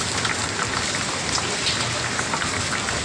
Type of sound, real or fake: real